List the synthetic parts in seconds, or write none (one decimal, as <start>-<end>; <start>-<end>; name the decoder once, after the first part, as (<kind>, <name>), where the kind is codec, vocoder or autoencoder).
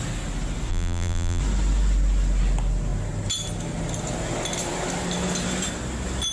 0.7-1.4 (vocoder, BigVGAN v2)